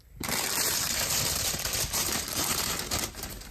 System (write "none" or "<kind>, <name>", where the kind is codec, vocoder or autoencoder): vocoder, BigVGAN v2